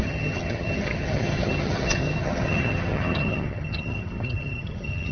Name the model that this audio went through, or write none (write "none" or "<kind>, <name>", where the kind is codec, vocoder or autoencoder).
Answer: vocoder, HiFi-GAN